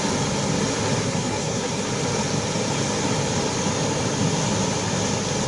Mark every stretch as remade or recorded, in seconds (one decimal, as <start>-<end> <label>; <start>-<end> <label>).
0.0-1.0 recorded; 1.0-1.7 remade; 1.7-5.5 recorded